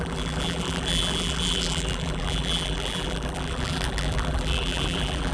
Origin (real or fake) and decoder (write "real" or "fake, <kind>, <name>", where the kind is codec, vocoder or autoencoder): fake, vocoder, BigVGAN v2